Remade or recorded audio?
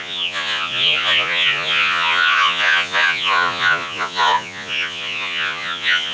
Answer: remade